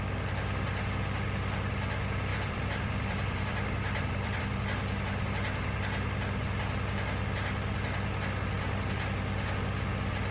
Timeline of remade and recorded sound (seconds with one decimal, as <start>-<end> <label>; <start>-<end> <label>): 0.0-2.3 recorded; 2.3-4.4 remade; 4.4-10.3 recorded